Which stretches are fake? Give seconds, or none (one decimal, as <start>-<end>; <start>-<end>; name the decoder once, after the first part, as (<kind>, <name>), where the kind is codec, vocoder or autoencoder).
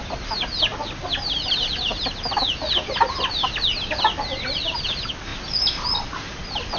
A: none